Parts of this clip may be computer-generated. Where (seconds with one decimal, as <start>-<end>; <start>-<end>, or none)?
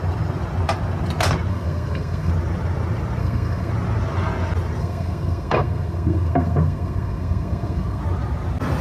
1.5-2.3; 3.2-3.7; 4.8-8.0